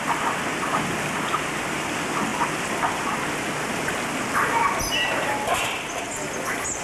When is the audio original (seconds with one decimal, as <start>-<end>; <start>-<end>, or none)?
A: 0.0-6.8